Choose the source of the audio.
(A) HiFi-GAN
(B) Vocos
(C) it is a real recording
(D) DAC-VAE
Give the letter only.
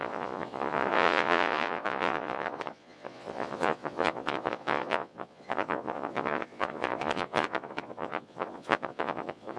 B